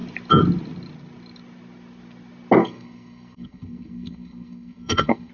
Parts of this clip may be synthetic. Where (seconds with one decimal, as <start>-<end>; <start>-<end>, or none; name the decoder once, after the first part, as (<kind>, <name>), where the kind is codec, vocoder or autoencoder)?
2.6-5.3 (codec, SNAC)